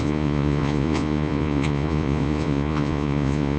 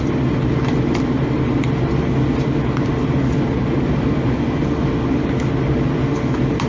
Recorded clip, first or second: second